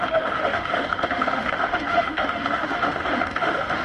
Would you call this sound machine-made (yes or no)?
yes